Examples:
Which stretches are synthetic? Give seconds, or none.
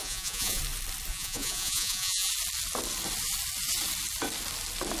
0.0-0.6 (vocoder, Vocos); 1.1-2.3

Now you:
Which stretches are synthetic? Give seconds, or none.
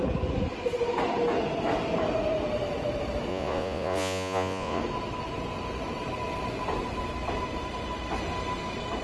3.3-4.8 (vocoder, Vocos)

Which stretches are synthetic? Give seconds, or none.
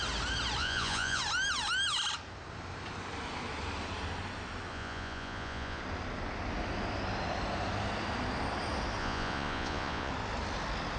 0.6-1.2 (vocoder, Vocos); 4.7-5.8; 9.0-10.1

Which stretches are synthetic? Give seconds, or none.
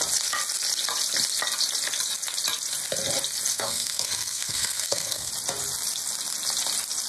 3.5-5.3 (codec, SNAC)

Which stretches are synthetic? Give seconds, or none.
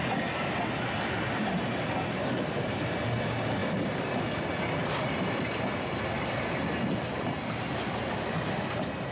none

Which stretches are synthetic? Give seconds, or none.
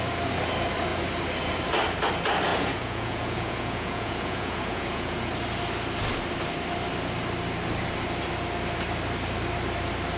2.5-5.3 (vocoder, Vocos)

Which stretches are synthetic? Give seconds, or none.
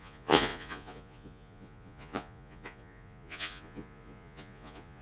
0.0-5.0 (vocoder, Vocos)